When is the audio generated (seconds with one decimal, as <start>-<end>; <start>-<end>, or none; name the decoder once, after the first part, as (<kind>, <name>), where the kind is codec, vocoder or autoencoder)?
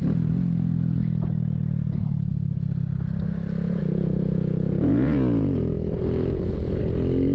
3.8-6.8 (vocoder, Vocos)